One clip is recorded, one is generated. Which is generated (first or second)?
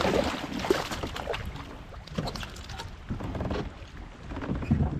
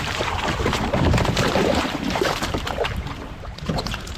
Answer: second